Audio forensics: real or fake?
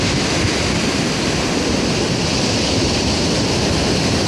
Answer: real